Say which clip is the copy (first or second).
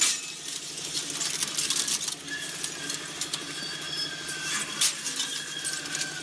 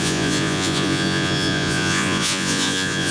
second